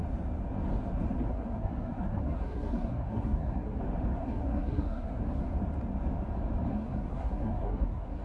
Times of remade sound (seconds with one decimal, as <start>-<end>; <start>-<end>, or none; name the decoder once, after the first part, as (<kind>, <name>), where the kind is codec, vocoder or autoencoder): 1.3-3.8 (codec, SNAC); 4.2-5.4; 6.7-8.2